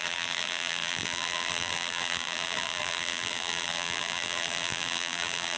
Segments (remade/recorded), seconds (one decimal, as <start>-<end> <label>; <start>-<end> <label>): 0.0-5.6 remade